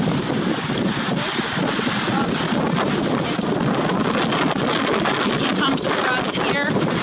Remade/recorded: recorded